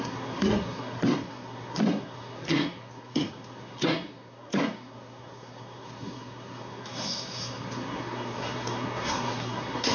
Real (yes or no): no